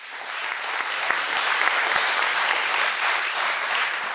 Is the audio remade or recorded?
remade